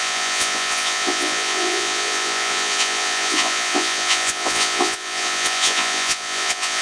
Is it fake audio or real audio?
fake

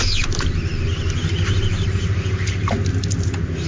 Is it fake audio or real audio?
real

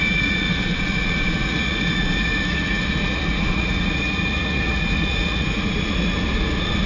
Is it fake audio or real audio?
fake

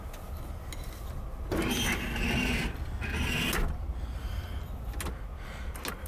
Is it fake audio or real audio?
real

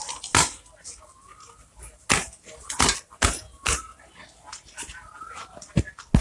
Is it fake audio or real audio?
real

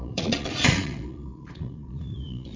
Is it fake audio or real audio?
fake